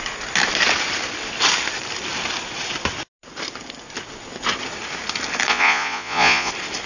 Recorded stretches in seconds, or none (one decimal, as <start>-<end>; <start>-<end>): 0.0-5.5; 6.5-6.9